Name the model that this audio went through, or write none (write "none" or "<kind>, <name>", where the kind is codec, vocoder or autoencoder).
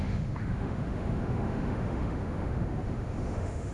autoencoder, DAC-VAE